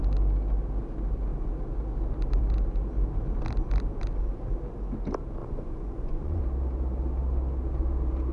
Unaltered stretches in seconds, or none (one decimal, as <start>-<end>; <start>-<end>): 0.0-5.4; 6.4-8.3